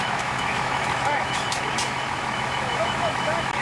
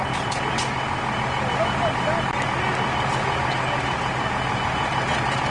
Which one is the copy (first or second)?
first